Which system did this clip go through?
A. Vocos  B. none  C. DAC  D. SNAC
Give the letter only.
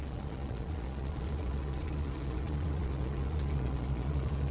A